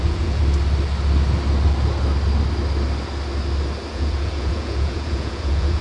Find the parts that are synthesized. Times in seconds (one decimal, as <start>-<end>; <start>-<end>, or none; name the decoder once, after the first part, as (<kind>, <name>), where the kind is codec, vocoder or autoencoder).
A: 0.0-0.4 (vocoder, Vocos); 3.9-5.8